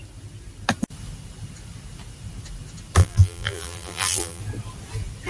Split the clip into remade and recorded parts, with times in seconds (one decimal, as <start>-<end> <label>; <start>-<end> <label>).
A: 0.0-3.0 recorded; 3.0-4.4 remade; 4.4-5.3 recorded